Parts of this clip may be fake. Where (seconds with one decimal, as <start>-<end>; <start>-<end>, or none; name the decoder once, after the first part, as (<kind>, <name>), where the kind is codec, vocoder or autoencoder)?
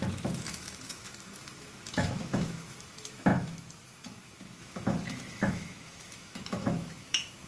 0.0-7.5 (autoencoder, DAC-VAE)